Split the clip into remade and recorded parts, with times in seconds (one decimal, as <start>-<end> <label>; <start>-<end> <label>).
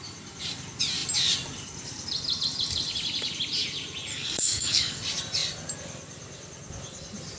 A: 0.0-4.1 recorded; 4.1-5.0 remade; 5.0-7.4 recorded